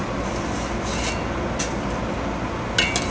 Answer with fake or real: real